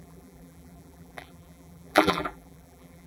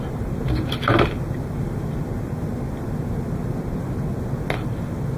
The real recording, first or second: second